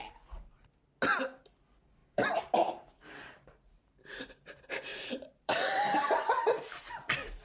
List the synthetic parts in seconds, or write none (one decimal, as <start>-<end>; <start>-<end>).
2.0-4.1; 4.9-6.8